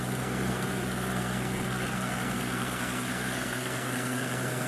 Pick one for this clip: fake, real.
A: fake